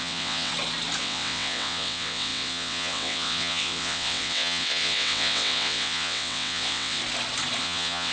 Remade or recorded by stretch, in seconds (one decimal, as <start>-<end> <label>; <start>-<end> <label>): 0.0-0.5 remade; 0.5-1.0 recorded; 1.0-7.0 remade; 7.0-7.6 recorded; 7.6-8.1 remade